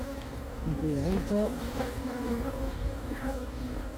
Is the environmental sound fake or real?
fake